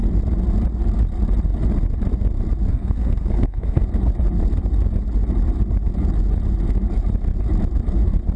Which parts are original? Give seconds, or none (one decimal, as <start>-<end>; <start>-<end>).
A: 0.0-2.7; 3.8-8.4